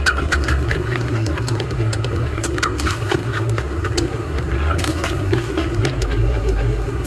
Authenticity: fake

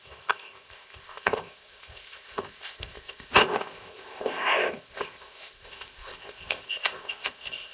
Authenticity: fake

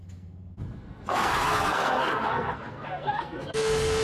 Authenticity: fake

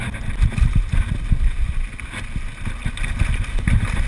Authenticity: real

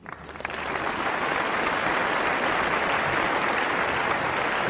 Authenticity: real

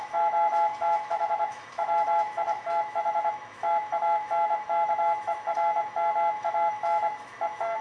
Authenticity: fake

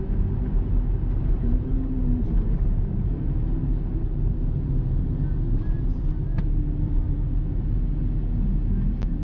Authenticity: real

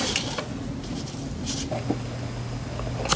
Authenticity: real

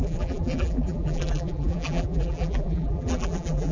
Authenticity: fake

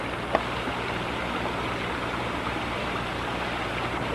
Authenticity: real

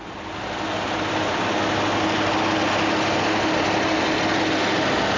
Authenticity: real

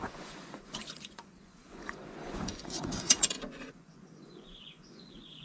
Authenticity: fake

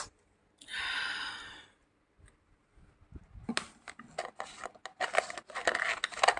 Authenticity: real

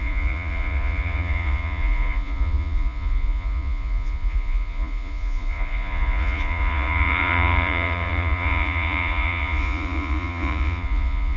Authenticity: fake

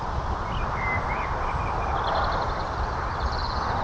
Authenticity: real